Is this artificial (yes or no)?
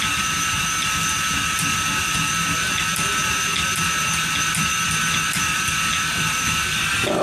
no